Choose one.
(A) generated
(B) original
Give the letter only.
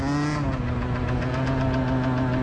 B